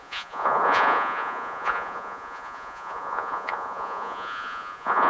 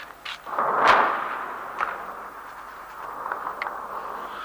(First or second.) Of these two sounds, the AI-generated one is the first